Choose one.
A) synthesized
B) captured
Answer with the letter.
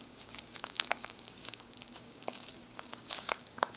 A